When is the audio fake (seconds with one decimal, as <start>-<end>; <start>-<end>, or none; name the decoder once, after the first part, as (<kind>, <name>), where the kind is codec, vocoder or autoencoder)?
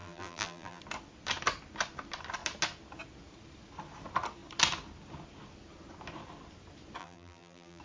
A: 0.0-0.8 (vocoder, BigVGAN v2); 7.0-7.8